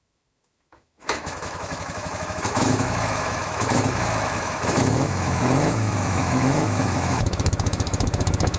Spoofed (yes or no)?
yes